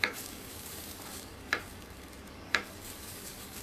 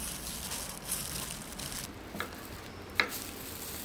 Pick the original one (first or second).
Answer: second